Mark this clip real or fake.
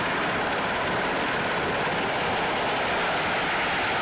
real